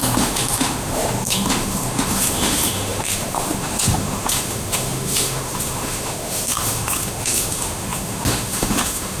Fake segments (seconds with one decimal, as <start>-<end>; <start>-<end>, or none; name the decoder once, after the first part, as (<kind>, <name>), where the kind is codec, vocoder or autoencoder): 0.0-9.2 (autoencoder, DAC-VAE)

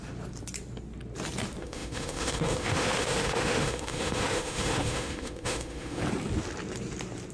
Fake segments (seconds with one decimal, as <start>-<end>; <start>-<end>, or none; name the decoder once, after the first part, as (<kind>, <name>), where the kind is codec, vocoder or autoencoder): 1.6-6.0 (autoencoder, DAC-VAE)

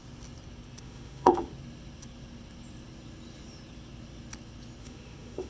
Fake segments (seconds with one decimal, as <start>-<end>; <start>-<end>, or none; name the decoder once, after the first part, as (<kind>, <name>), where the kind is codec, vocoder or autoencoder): 0.8-1.5 (autoencoder, DAC-VAE); 4.8-5.5

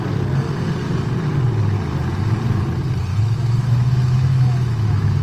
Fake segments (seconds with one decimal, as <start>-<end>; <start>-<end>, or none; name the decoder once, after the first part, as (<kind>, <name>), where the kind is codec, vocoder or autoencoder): 3.1-5.2 (autoencoder, DAC-VAE)

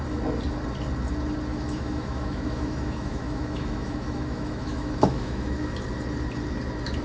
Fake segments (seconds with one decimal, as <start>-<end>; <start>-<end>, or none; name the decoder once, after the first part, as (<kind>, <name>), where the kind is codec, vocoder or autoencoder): 1.5-5.7 (autoencoder, DAC-VAE)